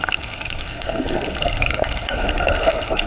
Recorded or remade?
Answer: remade